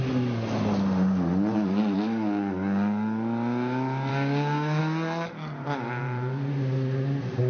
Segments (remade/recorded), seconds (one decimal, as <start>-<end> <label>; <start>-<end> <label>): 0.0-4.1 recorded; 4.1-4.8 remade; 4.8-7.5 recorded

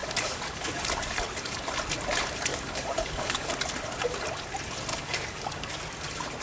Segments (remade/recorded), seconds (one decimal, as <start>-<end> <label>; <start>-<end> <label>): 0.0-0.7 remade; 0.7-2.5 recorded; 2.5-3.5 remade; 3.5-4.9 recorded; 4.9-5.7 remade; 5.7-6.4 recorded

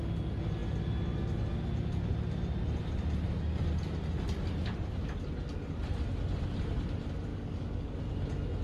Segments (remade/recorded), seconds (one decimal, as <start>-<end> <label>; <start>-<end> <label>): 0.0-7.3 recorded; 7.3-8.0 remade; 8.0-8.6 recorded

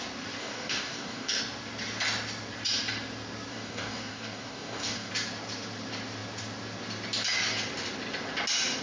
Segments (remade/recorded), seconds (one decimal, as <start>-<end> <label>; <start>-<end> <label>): 0.0-0.4 recorded; 0.4-1.4 remade; 1.4-3.5 recorded; 3.5-5.1 remade; 5.1-8.8 recorded

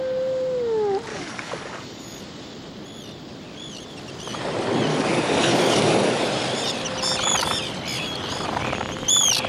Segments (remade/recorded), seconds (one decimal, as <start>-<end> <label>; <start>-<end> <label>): 0.0-1.1 recorded; 1.1-2.2 remade; 2.2-4.9 recorded; 4.9-6.2 remade; 6.2-9.5 recorded

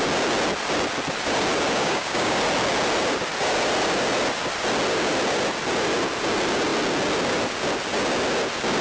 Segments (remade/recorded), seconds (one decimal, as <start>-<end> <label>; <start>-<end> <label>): 0.0-1.8 recorded; 1.8-2.4 remade; 2.4-8.8 recorded

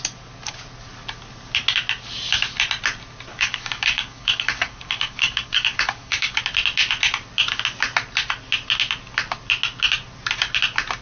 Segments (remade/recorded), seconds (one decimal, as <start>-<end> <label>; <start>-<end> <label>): 0.0-3.3 recorded; 3.3-6.4 remade; 6.4-11.0 recorded

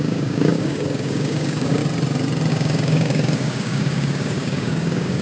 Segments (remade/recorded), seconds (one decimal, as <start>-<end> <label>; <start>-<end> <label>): 0.0-1.8 remade; 1.8-2.5 recorded; 2.5-5.2 remade